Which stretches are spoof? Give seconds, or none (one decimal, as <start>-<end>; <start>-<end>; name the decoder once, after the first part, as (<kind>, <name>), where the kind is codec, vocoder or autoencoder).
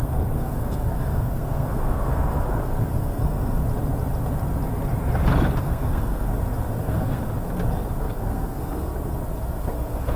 0.0-3.6 (codec, SNAC); 5.6-6.3; 6.8-7.2; 8.0-8.9; 9.6-10.2